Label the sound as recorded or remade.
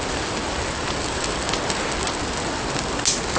recorded